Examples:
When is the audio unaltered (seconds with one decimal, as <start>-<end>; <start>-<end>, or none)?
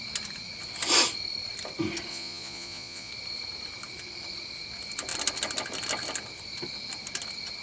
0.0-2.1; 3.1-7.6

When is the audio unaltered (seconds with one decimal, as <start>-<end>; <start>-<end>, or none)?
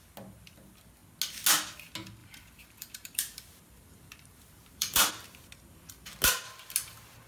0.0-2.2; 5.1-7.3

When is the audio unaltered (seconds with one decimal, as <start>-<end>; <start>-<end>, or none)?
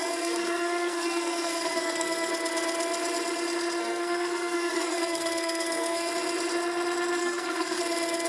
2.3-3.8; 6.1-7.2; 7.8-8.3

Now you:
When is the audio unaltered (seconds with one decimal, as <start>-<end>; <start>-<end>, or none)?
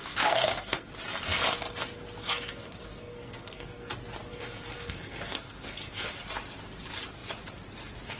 0.9-2.2; 3.9-4.3; 6.1-8.2